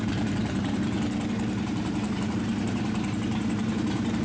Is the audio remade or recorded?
remade